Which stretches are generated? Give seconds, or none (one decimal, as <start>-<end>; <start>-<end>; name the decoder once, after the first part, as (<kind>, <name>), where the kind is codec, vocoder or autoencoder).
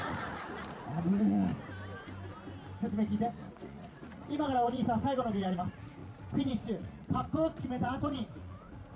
0.0-1.5 (vocoder, Vocos); 3.3-9.0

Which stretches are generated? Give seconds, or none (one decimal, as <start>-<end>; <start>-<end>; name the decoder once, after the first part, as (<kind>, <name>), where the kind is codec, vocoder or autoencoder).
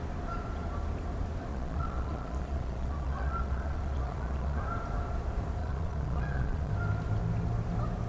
1.5-4.6 (vocoder, Vocos); 5.6-6.7